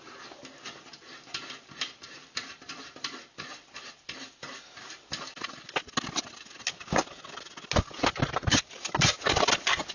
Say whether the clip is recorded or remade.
recorded